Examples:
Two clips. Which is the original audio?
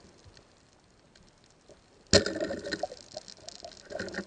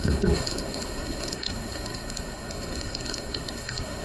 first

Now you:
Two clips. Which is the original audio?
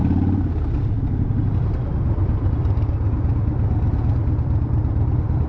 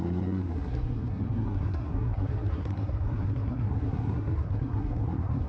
first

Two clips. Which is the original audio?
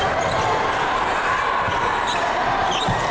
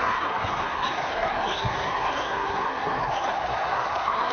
first